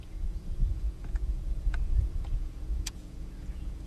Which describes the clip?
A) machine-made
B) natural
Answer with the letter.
A